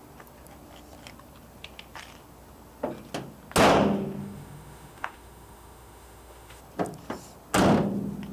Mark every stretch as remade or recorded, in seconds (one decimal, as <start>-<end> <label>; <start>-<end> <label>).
0.0-4.2 recorded; 4.2-6.6 remade; 6.6-8.3 recorded